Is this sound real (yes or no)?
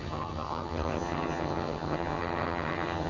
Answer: no